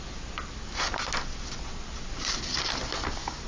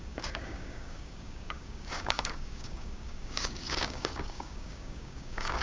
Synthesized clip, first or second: second